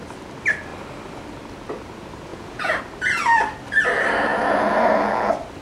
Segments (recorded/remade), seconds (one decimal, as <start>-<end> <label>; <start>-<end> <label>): 0.0-2.3 recorded; 2.3-2.8 remade; 2.8-5.6 recorded